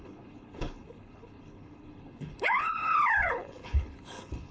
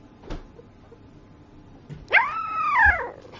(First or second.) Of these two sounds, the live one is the second